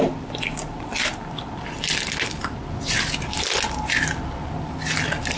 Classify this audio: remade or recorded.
recorded